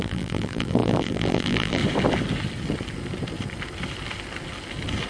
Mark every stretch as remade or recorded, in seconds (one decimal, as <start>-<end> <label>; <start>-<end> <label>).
0.0-1.8 remade; 1.8-5.1 recorded